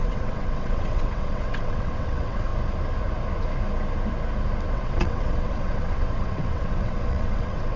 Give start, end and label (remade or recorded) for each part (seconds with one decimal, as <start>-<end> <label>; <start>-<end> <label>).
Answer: 0.0-2.5 remade; 2.5-4.7 recorded; 4.7-7.8 remade